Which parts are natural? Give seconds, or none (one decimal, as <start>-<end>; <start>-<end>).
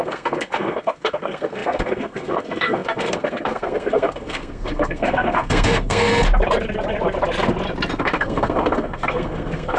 6.1-8.0